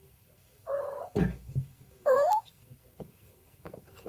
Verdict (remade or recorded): remade